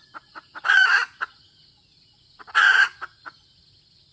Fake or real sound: fake